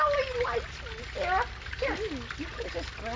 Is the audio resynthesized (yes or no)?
no